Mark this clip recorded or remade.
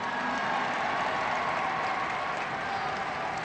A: recorded